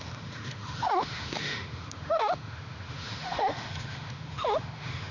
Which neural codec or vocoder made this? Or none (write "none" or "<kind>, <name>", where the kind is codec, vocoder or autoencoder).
autoencoder, DAC-VAE